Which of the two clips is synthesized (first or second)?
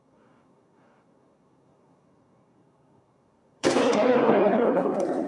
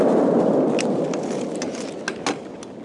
first